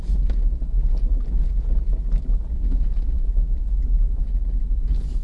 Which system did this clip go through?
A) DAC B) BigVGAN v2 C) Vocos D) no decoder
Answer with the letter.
D